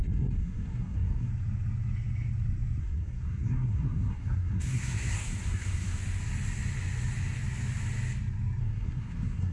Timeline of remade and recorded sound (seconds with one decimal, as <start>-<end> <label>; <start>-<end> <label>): 0.0-1.3 remade; 1.3-2.8 recorded; 2.8-6.0 remade; 6.0-8.6 recorded; 8.6-9.5 remade